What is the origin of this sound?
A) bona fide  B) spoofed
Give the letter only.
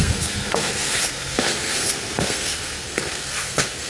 B